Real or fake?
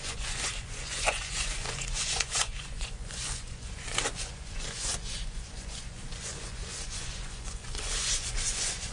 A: fake